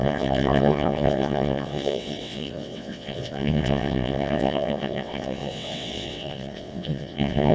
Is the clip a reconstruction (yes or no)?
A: yes